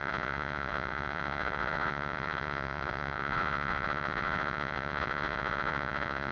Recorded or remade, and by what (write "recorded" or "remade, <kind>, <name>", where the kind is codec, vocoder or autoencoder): remade, vocoder, Vocos